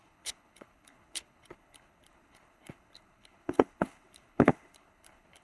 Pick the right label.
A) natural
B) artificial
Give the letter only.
B